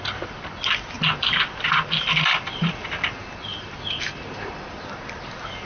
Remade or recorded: recorded